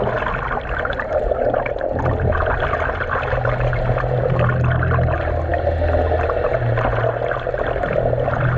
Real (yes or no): yes